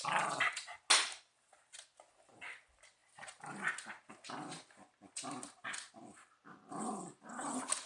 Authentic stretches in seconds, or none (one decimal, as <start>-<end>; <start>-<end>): 0.0-7.9